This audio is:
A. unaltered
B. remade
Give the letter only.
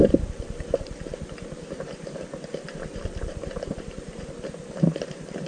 B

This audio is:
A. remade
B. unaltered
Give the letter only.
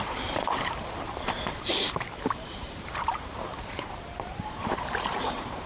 A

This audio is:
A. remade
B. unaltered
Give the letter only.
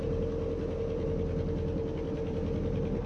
B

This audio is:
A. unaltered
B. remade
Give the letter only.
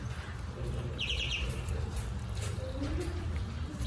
B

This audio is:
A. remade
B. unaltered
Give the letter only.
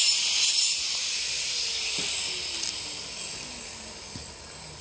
B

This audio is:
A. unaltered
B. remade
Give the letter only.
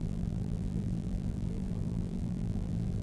B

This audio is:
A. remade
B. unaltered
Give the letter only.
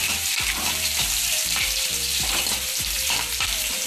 A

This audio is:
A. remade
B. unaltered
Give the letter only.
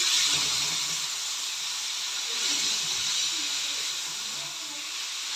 B